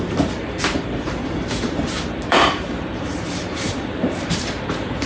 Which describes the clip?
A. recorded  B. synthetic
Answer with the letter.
B